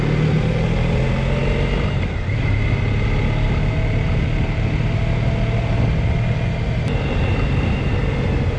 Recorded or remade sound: recorded